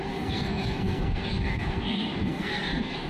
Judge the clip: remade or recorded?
remade